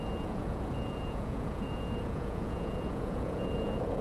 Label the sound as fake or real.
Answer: fake